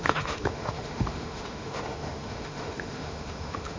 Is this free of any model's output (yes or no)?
no